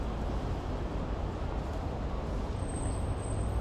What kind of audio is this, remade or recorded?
recorded